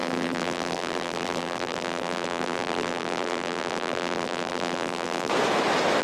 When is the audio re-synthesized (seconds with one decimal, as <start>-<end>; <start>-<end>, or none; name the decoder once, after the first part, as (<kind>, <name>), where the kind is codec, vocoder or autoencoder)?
0.0-5.3 (vocoder, BigVGAN v2)